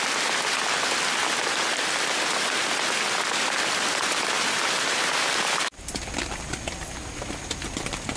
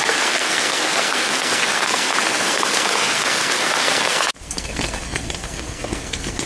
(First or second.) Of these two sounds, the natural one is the first